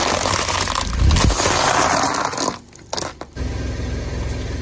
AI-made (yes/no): no